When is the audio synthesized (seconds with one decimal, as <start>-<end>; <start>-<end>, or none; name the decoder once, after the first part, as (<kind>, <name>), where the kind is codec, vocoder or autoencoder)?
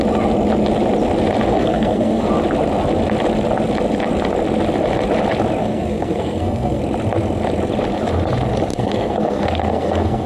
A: 1.5-2.3 (codec, SNAC); 5.6-6.8; 8.7-10.3